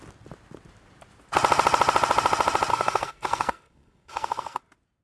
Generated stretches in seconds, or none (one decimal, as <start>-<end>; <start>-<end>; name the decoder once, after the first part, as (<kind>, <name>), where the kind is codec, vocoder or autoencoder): 2.7-4.6 (codec, SNAC)